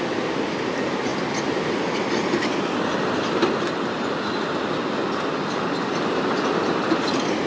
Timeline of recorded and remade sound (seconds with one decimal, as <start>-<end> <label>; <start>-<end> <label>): 0.0-7.5 recorded